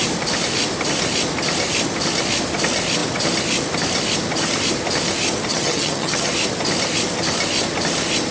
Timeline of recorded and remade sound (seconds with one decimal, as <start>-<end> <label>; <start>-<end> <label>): 0.0-5.5 recorded; 5.5-6.3 remade; 6.3-8.3 recorded